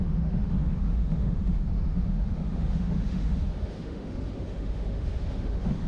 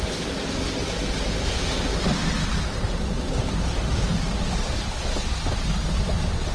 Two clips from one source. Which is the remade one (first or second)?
first